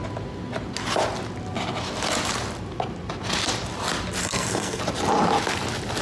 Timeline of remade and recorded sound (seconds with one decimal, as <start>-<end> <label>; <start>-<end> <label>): 0.0-4.2 recorded; 4.2-4.8 remade; 4.8-6.0 recorded